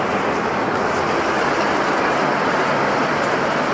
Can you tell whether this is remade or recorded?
recorded